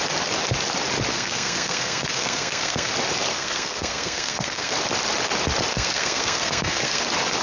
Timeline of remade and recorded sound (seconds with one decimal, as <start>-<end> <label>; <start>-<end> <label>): 0.0-1.1 recorded; 1.1-2.9 remade; 2.9-3.3 recorded; 3.3-4.7 remade; 4.7-5.7 recorded; 5.7-7.0 remade; 7.0-7.4 recorded